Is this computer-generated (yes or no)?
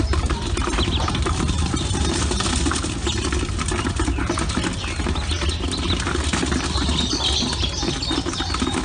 no